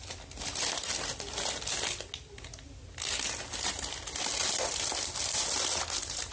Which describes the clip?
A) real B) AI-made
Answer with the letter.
A